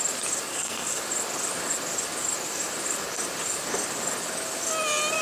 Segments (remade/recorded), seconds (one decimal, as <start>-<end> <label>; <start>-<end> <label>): 0.0-0.5 recorded; 0.5-1.0 remade; 1.0-5.2 recorded